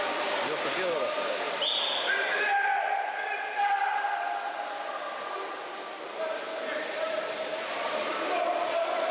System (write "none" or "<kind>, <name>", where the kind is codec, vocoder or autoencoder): vocoder, BigVGAN v2